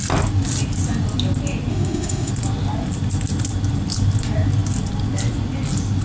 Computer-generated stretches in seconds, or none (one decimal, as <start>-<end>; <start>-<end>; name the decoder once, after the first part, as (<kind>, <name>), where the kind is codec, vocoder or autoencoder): 1.7-2.3 (autoencoder, DAC-VAE)